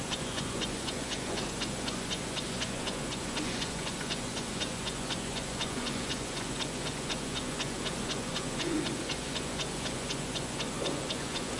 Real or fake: fake